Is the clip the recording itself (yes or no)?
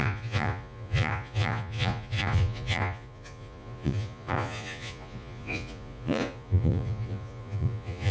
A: no